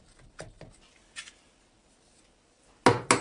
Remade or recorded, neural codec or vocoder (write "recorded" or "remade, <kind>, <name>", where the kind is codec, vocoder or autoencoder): recorded